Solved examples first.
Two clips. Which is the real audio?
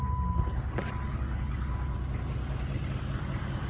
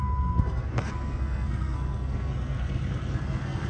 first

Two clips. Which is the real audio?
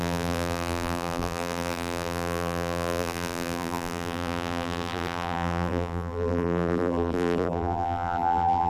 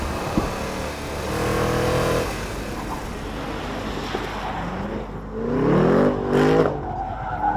second